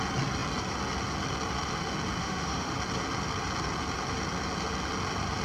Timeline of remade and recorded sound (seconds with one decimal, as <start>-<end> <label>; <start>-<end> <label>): 0.0-2.2 recorded; 2.2-2.7 remade; 2.7-5.4 recorded